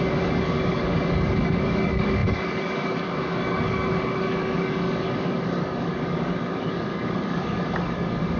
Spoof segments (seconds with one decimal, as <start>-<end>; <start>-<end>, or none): 0.0-8.4